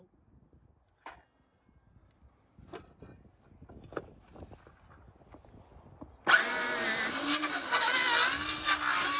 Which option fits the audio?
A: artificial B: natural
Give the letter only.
B